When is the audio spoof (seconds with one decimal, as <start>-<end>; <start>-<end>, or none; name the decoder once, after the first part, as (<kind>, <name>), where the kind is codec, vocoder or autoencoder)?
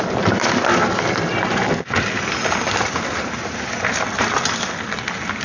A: none